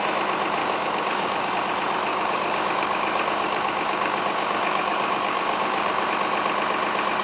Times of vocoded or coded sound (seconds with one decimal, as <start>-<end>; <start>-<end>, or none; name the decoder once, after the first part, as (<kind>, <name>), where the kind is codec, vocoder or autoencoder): 0.6-1.5 (codec, DAC); 2.1-6.1